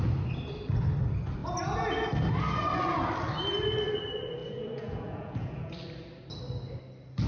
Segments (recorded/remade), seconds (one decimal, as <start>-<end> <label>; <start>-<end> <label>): 0.0-4.4 recorded; 4.4-5.7 remade; 5.7-7.3 recorded